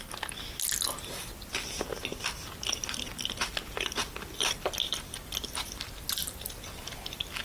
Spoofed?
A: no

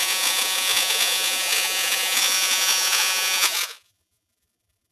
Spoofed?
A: yes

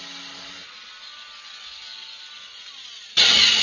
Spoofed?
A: no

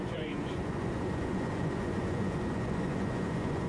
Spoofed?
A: yes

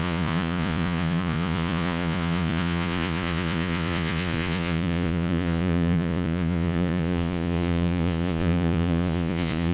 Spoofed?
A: yes